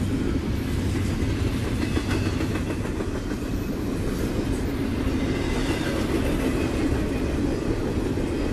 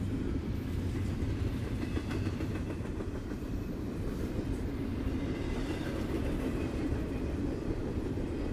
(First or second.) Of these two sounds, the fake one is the second